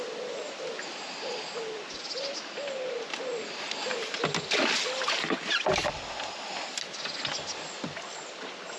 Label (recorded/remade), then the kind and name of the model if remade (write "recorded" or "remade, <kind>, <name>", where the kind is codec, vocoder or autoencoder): recorded